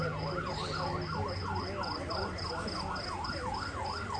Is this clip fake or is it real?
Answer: real